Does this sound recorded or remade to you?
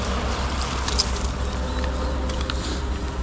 recorded